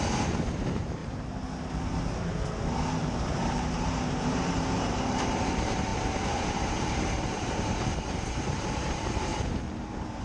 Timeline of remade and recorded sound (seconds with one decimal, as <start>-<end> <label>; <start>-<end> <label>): 0.0-1.0 remade; 1.0-3.0 recorded; 3.0-9.3 remade; 9.3-10.2 recorded